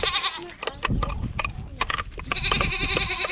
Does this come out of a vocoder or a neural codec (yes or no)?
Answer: no